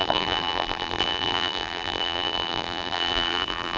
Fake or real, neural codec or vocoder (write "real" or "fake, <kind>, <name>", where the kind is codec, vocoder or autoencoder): fake, vocoder, BigVGAN v2